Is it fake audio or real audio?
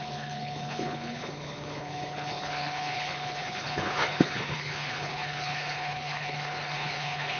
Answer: fake